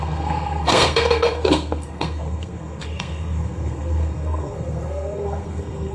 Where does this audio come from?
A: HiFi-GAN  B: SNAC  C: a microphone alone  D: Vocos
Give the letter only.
B